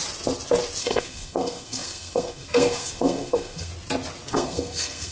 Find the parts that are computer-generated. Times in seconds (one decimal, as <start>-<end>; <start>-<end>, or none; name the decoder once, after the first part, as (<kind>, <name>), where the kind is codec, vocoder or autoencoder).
0.8-3.7 (codec, SNAC); 4.3-5.1